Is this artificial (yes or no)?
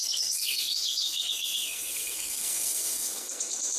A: yes